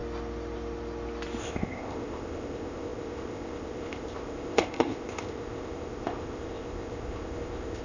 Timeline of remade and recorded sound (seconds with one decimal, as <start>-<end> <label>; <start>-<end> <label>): 0.0-1.4 recorded; 1.4-7.8 remade